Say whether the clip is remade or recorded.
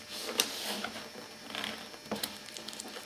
recorded